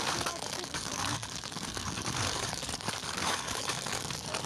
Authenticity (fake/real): fake